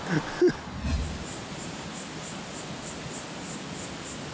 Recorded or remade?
recorded